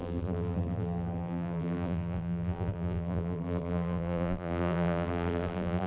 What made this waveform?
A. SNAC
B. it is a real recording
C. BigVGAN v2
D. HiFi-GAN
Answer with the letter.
C